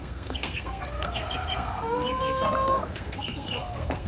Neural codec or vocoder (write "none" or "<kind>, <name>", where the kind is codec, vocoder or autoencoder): codec, SNAC